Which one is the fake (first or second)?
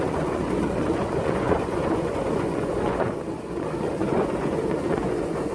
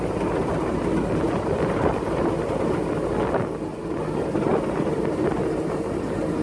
first